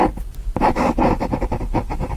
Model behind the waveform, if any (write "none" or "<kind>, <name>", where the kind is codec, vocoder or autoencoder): none